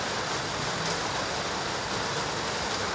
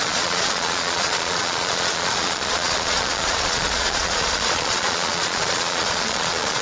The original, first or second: first